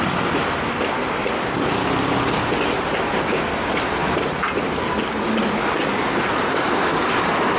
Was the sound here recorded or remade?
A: recorded